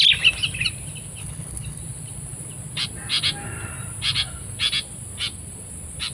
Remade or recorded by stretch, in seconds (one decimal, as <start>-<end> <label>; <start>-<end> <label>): 0.0-1.2 recorded; 1.2-1.8 remade; 1.8-6.1 recorded